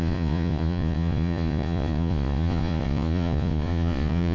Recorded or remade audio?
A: remade